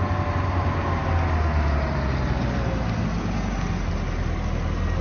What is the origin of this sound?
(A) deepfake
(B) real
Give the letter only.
B